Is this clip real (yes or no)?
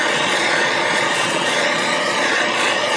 no